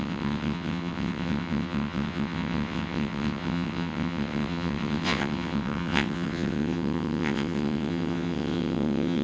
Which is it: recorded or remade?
remade